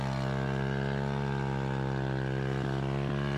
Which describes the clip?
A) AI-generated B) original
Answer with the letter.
B